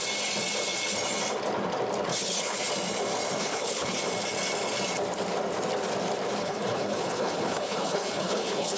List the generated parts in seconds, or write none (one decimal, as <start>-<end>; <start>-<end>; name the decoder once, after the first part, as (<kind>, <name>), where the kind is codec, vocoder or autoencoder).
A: 2.1-2.6 (codec, HILCodec); 3.4-4.0; 6.4-8.8